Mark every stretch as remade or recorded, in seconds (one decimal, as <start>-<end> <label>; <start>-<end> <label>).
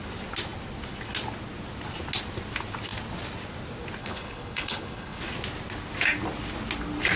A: 0.0-4.0 recorded; 4.0-5.2 remade; 5.2-7.2 recorded